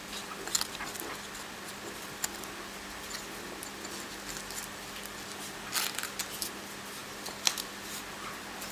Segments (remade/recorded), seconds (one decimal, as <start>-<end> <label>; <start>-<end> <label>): 0.0-7.0 recorded; 7.0-7.7 remade; 7.7-8.7 recorded